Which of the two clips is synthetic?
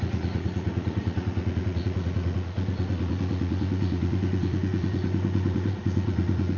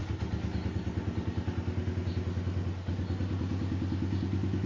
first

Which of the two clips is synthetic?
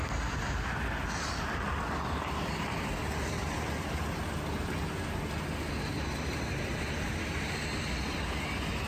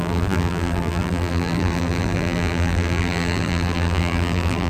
second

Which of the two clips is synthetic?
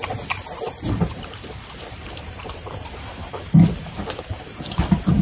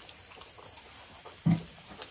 first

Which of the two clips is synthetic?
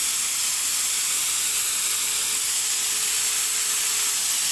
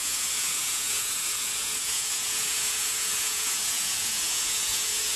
second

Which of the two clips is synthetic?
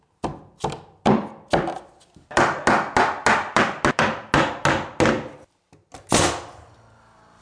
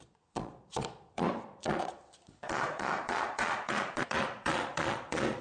second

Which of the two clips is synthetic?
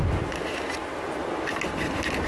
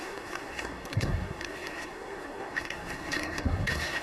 second